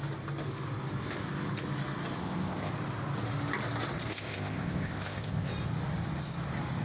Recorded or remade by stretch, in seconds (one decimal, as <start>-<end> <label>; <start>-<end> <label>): 0.0-2.2 recorded; 2.2-2.7 remade; 2.7-4.1 recorded; 4.1-5.5 remade; 5.5-6.8 recorded